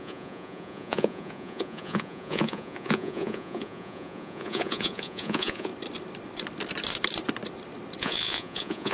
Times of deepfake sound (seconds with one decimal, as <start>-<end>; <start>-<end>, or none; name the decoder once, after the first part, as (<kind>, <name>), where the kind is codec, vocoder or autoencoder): 0.0-5.7 (vocoder, Vocos); 8.0-8.9